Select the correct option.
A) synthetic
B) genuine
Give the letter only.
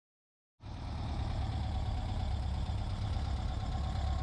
B